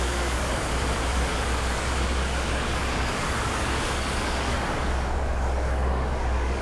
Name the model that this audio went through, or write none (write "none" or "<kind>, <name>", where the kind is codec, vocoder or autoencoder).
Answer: codec, DAC